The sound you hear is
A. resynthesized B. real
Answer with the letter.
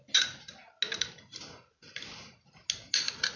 B